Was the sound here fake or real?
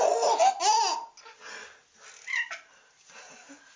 real